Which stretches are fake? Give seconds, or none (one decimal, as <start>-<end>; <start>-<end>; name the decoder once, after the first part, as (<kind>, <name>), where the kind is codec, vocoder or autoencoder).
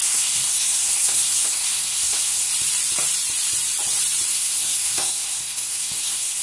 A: 0.0-2.5 (codec, SNAC); 4.3-6.4